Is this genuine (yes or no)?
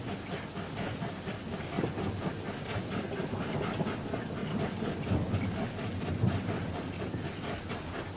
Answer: yes